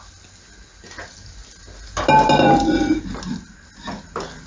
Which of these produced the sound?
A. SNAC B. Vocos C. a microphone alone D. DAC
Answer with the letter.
C